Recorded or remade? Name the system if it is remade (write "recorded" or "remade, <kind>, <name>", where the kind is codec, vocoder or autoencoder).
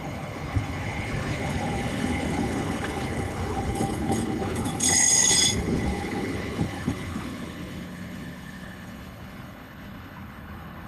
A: remade, codec, HILCodec